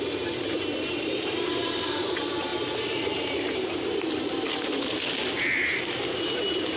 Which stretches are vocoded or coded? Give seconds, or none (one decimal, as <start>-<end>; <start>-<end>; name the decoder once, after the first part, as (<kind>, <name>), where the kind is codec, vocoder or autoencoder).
0.0-2.5 (vocoder, BigVGAN v2); 6.1-6.8

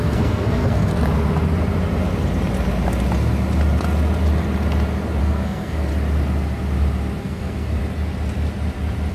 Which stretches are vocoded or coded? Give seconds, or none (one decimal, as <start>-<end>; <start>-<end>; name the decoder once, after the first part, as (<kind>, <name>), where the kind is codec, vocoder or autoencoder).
0.0-0.9 (codec, SNAC); 5.2-5.9; 7.2-7.8

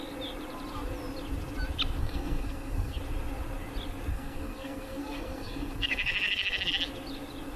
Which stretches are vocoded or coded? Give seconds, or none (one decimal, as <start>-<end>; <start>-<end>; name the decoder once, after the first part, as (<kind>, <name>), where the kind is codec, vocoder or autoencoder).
2.0-3.0 (codec, SNAC); 4.1-6.7

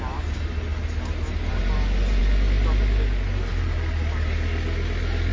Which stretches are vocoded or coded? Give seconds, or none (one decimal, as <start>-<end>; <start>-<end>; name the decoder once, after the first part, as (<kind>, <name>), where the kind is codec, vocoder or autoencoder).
none

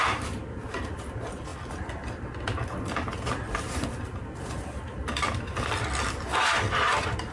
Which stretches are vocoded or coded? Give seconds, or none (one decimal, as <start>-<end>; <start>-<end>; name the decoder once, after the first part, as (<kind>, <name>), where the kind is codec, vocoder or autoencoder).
none